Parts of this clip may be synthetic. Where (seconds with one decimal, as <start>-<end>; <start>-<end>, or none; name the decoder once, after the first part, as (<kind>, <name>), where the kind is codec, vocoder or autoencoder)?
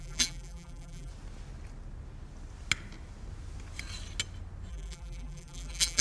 0.0-1.1 (vocoder, BigVGAN v2); 4.7-6.0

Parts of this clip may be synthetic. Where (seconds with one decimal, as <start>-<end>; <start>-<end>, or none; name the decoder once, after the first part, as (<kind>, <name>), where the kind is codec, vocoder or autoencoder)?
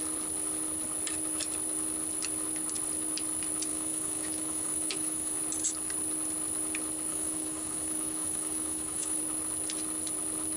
3.7-5.4 (autoencoder, DAC-VAE); 7.1-9.2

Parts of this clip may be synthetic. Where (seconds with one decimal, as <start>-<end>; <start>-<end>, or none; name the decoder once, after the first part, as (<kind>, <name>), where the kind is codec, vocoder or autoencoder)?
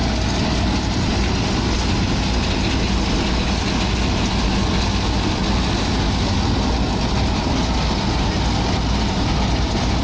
none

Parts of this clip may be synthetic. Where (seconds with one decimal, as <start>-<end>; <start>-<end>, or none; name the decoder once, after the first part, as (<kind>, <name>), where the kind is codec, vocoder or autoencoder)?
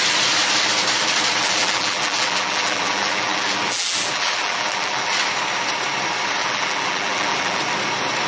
1.4-5.1 (vocoder, BigVGAN v2); 6.4-7.6